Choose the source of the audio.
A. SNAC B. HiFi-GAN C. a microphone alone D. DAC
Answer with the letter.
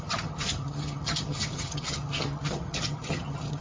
B